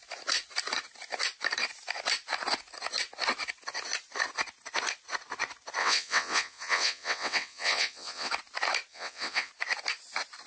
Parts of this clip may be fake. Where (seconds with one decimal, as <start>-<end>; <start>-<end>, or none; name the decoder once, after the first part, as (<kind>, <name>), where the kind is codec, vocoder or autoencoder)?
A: 5.8-8.3 (vocoder, WaveNeXt); 8.9-9.5